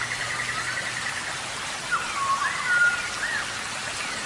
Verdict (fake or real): real